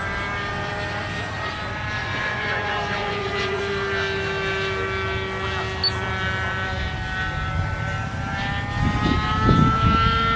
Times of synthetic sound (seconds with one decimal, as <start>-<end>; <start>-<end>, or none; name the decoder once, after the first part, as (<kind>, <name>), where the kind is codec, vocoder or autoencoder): 2.0-3.6 (vocoder, Vocos)